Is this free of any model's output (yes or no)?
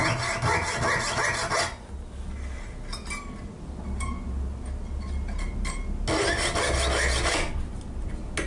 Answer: yes